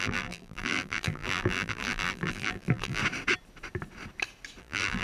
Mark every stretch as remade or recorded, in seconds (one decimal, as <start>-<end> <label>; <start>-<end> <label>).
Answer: 0.0-3.0 remade; 3.0-4.6 recorded; 4.6-5.0 remade